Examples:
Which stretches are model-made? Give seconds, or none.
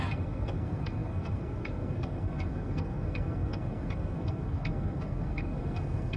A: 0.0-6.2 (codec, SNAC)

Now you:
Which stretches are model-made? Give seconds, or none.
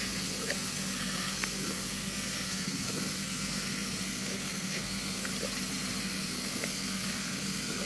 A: 0.0-5.3 (codec, SNAC); 6.0-7.9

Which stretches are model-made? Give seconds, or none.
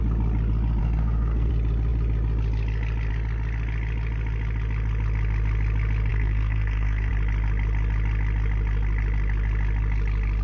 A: 0.8-1.5 (codec, SNAC); 6.1-7.1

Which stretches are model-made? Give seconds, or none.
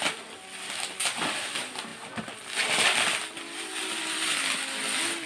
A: none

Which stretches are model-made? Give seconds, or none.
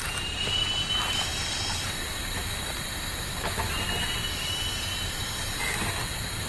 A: none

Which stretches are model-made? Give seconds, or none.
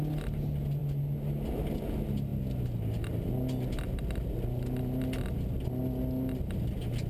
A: none